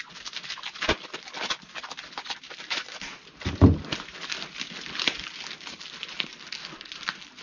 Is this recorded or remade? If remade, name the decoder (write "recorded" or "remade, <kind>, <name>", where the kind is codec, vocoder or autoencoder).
recorded